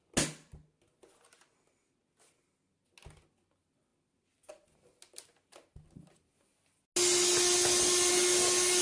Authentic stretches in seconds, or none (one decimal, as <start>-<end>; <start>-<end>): 0.0-8.8

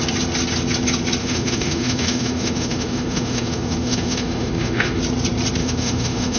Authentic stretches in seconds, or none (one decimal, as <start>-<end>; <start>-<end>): 0.0-1.2; 5.0-5.6

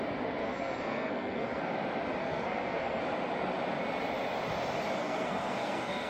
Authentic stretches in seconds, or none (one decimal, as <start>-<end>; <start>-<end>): 0.0-0.4; 1.6-2.2; 3.0-5.0